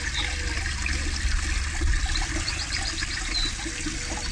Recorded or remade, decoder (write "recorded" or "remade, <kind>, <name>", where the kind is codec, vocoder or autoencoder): recorded